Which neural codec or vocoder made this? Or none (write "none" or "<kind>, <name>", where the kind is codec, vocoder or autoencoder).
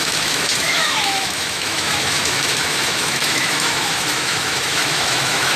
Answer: autoencoder, DAC-VAE